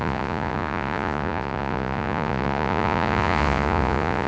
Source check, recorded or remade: remade